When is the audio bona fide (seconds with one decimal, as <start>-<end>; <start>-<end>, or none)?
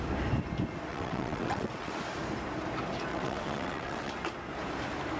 0.0-0.9; 1.9-3.1; 4.1-5.2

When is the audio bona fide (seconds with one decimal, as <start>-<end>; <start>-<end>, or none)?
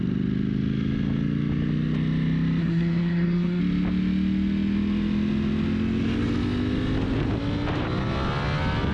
0.0-2.6; 3.6-8.9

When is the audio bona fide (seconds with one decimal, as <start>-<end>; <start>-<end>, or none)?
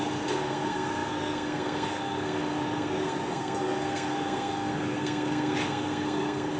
none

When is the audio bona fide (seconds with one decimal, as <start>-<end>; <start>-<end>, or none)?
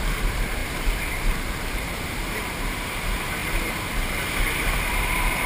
none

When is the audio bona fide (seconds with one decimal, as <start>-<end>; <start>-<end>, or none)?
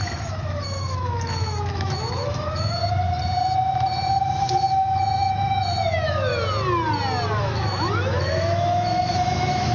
2.8-4.7; 6.3-7.4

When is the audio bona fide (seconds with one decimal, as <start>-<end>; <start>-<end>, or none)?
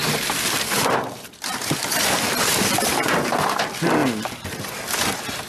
3.3-4.0; 4.8-5.5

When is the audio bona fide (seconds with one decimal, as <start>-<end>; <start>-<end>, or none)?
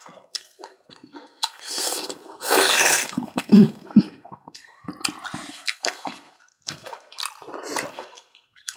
4.9-5.5; 7.2-7.9